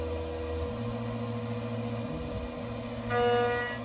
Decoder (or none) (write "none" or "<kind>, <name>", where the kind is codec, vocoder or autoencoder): none